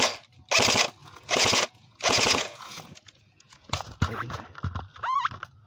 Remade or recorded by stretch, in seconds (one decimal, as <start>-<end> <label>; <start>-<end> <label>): 0.0-1.0 recorded; 1.0-4.4 remade; 4.4-5.7 recorded